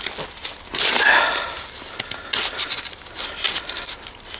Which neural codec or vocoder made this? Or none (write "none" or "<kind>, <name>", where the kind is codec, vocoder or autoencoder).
none